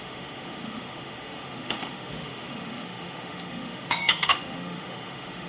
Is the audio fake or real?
fake